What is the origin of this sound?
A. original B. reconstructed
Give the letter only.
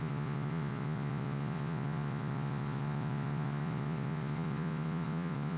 B